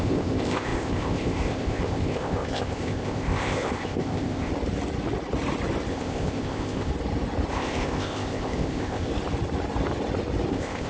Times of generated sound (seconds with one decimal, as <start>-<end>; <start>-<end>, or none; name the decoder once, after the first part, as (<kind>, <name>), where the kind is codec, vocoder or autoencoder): 0.0-4.5 (codec, ZipCodec); 5.9-6.9; 7.5-9.1; 10.5-10.9